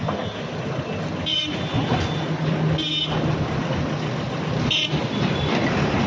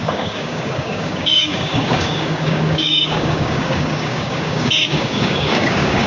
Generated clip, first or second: second